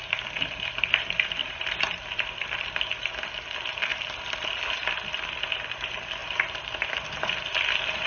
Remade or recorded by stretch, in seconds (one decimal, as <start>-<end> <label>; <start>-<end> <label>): 0.0-1.4 recorded; 1.4-2.8 remade; 2.8-6.2 recorded; 6.2-7.3 remade; 7.3-8.1 recorded